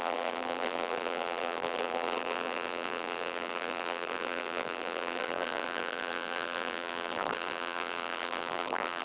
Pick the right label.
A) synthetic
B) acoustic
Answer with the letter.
A